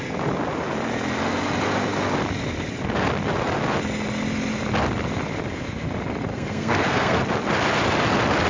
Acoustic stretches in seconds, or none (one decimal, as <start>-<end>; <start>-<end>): 0.0-6.3; 7.2-8.5